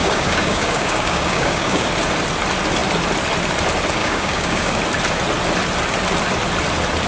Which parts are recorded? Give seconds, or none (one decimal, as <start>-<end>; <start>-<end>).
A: 1.9-4.0; 4.8-7.1